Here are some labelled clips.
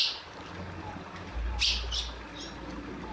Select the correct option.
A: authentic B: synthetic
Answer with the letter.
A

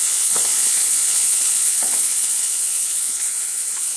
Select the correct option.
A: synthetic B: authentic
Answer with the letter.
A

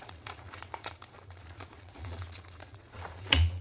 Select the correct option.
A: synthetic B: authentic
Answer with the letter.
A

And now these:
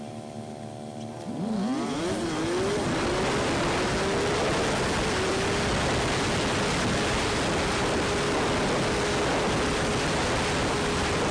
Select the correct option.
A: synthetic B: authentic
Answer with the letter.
B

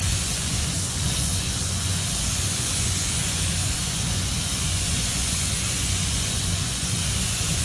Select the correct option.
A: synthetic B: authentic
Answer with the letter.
A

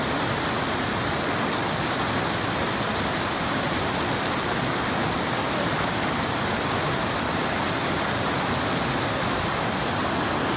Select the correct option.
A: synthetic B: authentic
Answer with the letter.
B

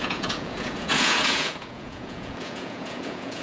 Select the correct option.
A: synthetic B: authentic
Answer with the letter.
A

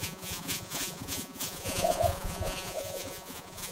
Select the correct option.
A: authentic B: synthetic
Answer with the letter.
B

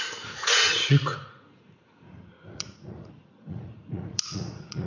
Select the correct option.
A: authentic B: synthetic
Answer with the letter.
B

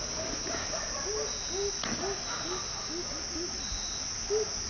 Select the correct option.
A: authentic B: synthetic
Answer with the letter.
A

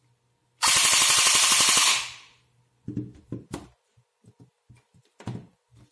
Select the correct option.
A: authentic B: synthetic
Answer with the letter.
A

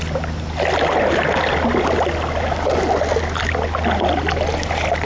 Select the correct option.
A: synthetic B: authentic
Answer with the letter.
B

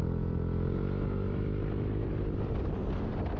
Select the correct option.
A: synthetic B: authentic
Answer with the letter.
B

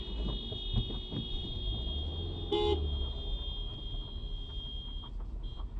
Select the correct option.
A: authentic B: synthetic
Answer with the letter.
A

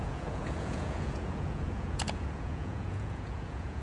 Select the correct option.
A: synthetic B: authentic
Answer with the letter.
A